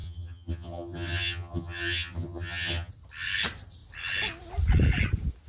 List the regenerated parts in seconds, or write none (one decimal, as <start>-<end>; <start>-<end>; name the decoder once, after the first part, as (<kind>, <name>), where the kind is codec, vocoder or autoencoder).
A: 0.0-2.9 (vocoder, HiFi-GAN)